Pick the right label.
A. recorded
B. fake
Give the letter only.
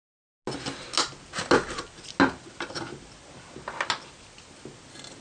A